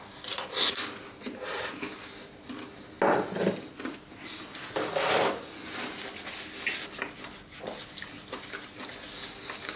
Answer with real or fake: real